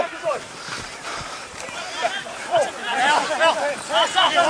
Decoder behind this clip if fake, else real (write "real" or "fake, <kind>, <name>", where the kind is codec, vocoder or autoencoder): fake, vocoder, BigVGAN v2